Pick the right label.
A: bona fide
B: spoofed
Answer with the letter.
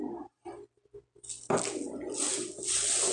A